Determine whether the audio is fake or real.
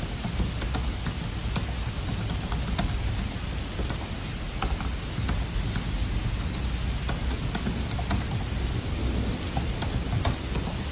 real